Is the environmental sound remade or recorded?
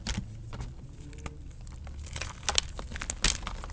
recorded